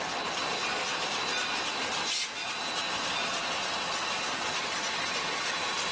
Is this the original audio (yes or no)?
yes